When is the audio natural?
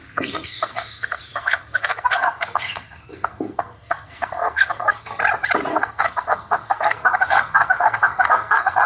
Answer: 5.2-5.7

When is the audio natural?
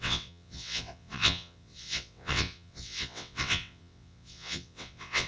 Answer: none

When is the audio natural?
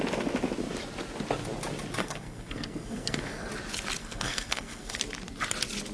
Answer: 0.0-2.0; 3.5-4.0; 5.0-5.9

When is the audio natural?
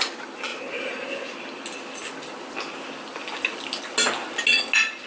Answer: 0.0-5.1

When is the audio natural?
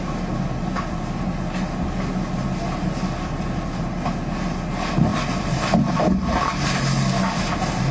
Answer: 0.0-5.1; 5.8-7.9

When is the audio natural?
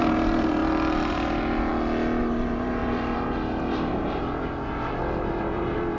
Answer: 0.6-1.1; 1.7-2.2